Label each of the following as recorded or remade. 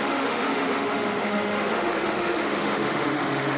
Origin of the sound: remade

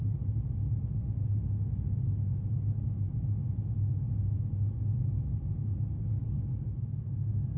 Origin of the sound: recorded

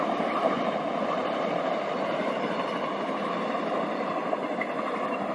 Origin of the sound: remade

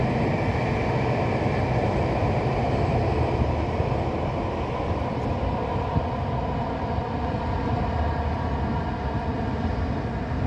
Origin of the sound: recorded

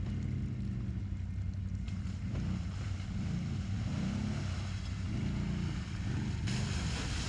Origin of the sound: recorded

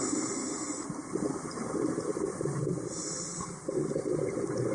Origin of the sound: recorded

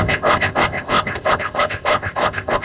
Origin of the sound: remade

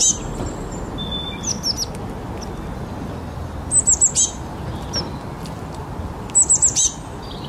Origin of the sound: recorded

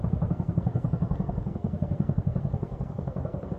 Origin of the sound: remade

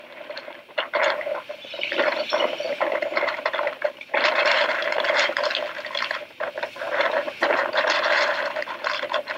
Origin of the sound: remade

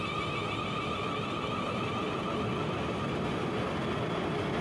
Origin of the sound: recorded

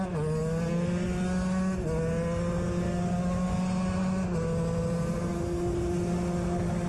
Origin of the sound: recorded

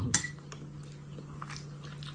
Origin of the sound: recorded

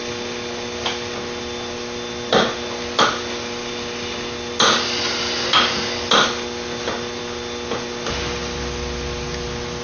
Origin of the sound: recorded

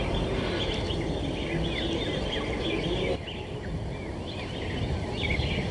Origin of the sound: recorded